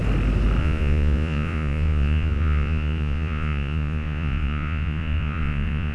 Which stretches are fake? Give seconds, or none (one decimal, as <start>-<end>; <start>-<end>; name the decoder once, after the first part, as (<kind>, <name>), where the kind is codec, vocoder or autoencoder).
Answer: 0.6-5.9 (vocoder, Vocos)

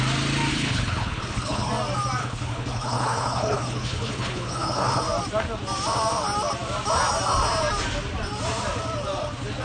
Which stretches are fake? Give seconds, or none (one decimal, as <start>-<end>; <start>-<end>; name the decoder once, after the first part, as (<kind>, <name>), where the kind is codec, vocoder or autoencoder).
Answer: 0.5-1.7 (codec, HILCodec); 2.2-5.0

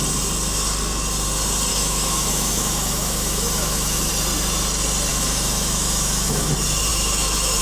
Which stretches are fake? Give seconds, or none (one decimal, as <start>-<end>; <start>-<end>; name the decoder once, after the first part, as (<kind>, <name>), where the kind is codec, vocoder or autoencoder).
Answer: 1.7-4.1 (autoencoder, DAC-VAE); 5.1-6.5; 6.9-7.6

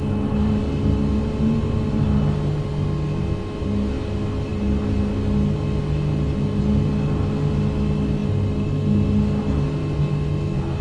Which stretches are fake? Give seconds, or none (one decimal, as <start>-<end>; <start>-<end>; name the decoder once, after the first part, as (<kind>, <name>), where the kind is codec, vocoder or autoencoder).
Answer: none

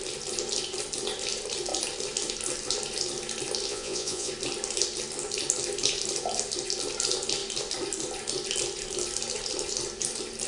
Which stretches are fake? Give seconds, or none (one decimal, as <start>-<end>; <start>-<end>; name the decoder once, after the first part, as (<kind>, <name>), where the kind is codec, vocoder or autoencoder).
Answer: 3.7-4.3 (vocoder, Vocos)

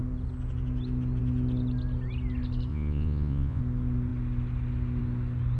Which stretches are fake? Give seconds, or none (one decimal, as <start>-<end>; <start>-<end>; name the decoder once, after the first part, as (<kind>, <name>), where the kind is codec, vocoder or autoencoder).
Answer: 2.7-3.6 (vocoder, Vocos)

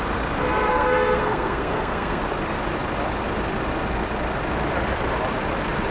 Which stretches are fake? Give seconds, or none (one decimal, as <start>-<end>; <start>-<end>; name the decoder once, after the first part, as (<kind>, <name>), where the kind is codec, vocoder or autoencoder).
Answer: 0.7-2.2 (codec, SNAC)